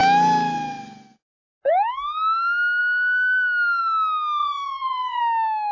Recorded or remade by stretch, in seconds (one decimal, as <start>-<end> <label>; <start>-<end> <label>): 0.0-4.4 recorded; 4.4-5.2 remade; 5.2-5.7 recorded